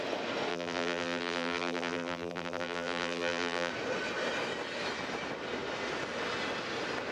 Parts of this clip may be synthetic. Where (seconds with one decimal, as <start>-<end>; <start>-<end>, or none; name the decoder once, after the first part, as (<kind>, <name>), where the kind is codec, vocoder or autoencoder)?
0.5-3.7 (vocoder, BigVGAN v2)